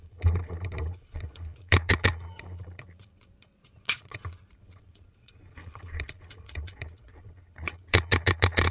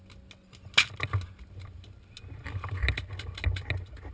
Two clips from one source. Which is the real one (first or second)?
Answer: second